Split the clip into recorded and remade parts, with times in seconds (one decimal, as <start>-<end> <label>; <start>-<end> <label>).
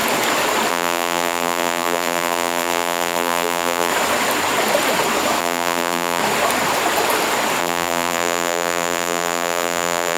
0.0-0.7 recorded; 0.7-3.9 remade; 3.9-5.4 recorded; 5.4-6.2 remade; 6.2-7.6 recorded; 7.6-10.2 remade